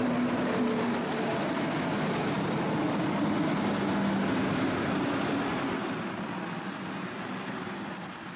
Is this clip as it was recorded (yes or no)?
yes